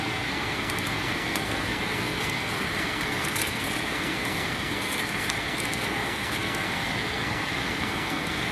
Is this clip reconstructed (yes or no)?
yes